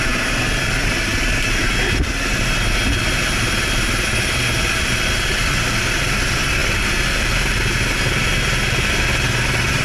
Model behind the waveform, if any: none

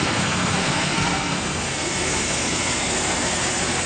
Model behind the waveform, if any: codec, SNAC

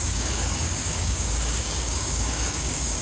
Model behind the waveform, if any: codec, DAC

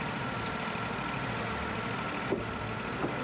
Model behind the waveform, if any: none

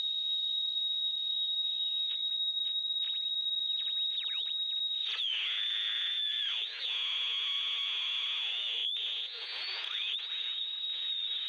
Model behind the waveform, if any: vocoder, Vocos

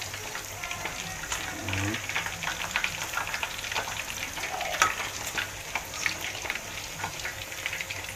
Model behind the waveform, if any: none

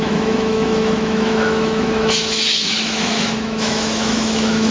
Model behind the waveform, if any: autoencoder, DAC-VAE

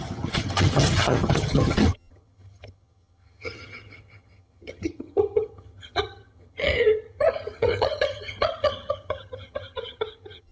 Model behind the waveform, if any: vocoder, HiFi-GAN